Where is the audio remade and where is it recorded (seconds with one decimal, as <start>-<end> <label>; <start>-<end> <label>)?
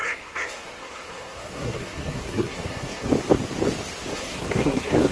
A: 0.0-3.1 remade; 3.1-4.1 recorded; 4.1-5.1 remade